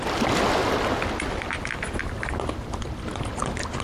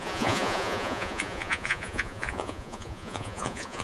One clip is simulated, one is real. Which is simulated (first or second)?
second